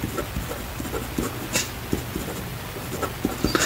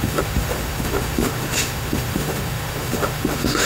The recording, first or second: first